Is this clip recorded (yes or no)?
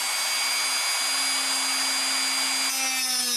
yes